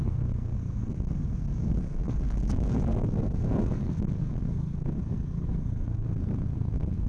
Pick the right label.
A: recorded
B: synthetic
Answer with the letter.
B